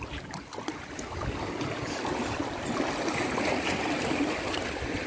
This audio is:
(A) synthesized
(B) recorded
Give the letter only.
B